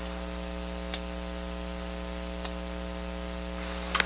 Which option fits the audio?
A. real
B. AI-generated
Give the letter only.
A